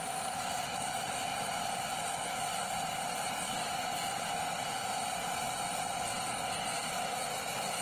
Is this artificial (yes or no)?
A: no